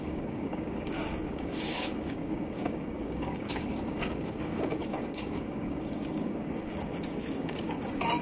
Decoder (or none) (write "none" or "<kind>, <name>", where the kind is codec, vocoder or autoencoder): codec, DAC